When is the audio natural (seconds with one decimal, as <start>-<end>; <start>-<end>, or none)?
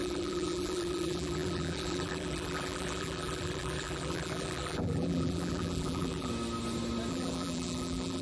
6.3-7.1